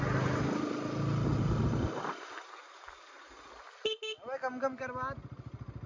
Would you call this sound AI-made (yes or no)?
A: no